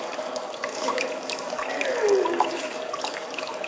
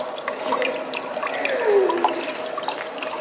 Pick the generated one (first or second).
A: first